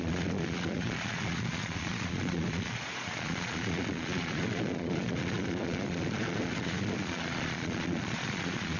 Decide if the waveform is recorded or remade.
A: remade